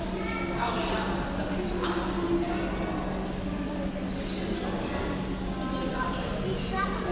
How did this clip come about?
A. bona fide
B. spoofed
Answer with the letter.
A